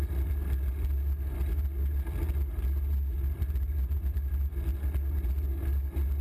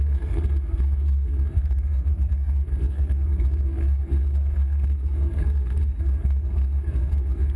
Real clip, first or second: first